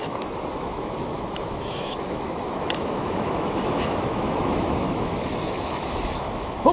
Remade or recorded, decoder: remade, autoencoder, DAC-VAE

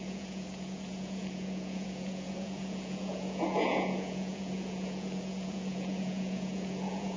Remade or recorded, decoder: remade, vocoder, Vocos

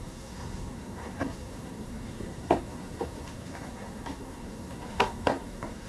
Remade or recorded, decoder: remade, codec, SNAC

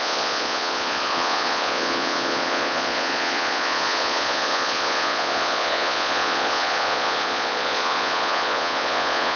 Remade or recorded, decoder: remade, vocoder, Vocos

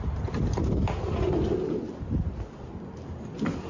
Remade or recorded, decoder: recorded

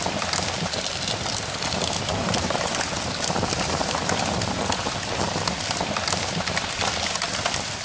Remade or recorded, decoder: remade, vocoder, BigVGAN v2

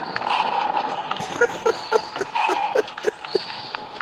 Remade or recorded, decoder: remade, codec, SNAC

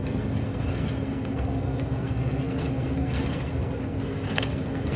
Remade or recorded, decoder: remade, codec, SNAC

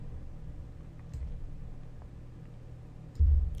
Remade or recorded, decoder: recorded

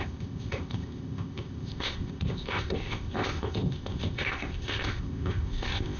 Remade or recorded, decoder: remade, codec, ZipCodec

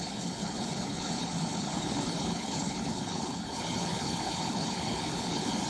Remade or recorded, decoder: remade, codec, HILCodec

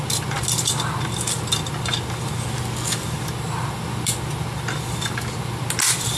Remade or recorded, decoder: recorded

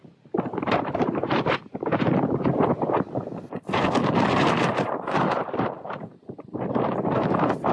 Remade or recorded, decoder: remade, vocoder, BigVGAN v2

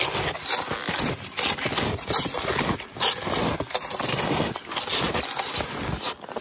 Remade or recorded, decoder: recorded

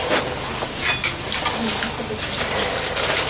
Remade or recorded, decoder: recorded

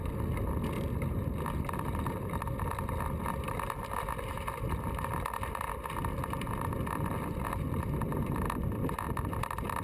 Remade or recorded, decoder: recorded